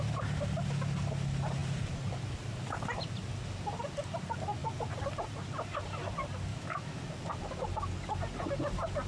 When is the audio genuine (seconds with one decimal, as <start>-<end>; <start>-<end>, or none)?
0.0-6.5; 7.0-9.1